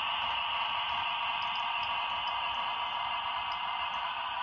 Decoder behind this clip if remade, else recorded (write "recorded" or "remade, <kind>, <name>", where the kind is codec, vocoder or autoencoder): recorded